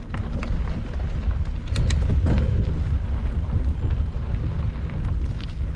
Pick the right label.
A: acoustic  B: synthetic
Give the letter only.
A